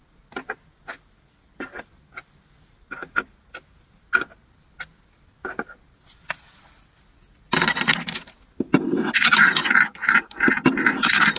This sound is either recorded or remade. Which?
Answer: recorded